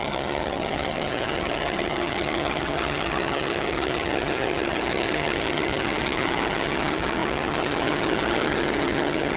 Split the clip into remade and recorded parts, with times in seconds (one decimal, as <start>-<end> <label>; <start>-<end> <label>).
0.0-9.4 remade